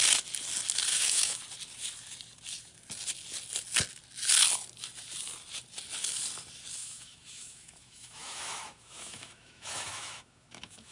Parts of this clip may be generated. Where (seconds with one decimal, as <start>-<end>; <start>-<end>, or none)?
0.9-1.4; 6.8-10.9